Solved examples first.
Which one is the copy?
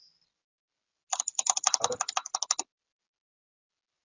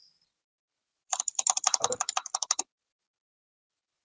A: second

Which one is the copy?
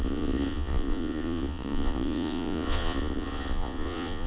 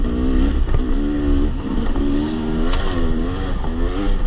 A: first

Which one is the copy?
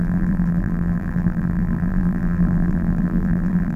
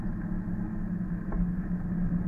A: first